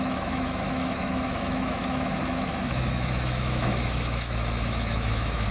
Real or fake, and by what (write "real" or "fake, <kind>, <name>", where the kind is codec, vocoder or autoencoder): fake, autoencoder, DAC-VAE